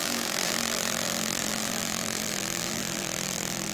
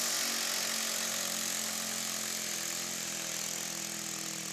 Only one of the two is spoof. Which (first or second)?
first